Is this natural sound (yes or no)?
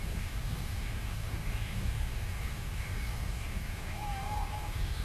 no